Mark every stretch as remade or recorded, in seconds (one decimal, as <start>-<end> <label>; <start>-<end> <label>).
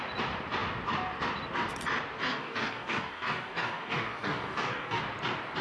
0.0-2.2 recorded; 2.2-5.0 remade; 5.0-5.6 recorded